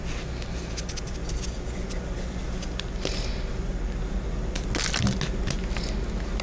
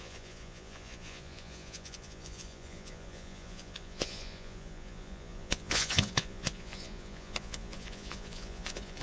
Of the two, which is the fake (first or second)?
second